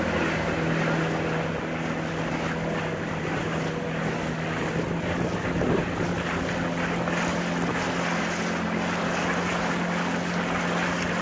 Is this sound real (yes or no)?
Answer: yes